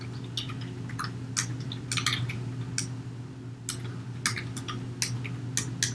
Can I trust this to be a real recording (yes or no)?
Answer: yes